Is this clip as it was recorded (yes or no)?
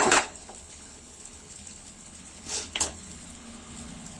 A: no